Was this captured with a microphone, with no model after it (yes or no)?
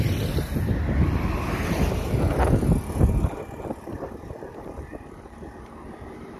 yes